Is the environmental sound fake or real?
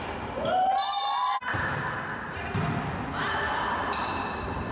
real